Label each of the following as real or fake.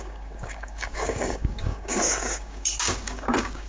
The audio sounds fake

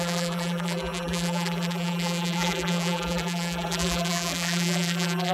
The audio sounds fake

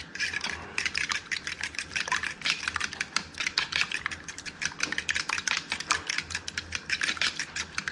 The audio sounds real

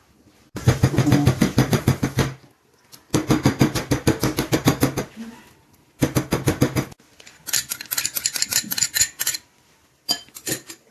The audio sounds real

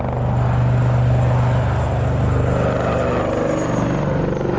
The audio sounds real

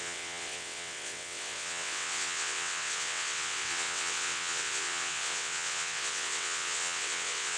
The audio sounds fake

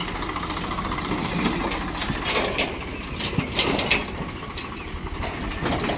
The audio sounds real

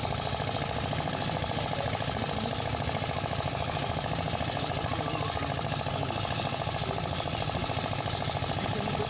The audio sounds real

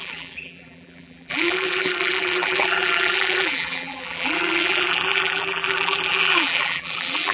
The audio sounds fake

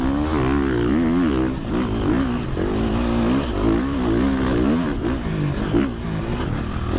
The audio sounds real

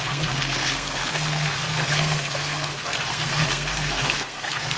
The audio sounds fake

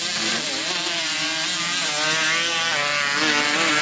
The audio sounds real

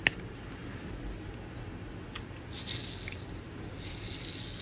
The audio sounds real